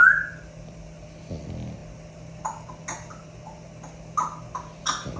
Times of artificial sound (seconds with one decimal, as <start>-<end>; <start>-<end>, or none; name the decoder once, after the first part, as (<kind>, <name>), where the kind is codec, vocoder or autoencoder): 0.0-0.8 (vocoder, BigVGAN v2)